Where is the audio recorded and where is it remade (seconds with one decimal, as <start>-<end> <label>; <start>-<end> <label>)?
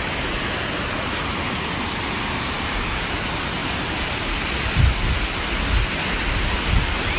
0.0-3.6 recorded; 3.6-4.6 remade; 4.6-7.2 recorded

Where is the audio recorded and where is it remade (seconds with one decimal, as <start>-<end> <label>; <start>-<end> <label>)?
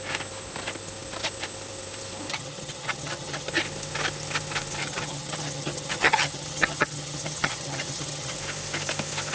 0.0-2.3 recorded; 2.3-3.5 remade; 3.5-4.8 recorded; 4.8-8.4 remade; 8.4-9.3 recorded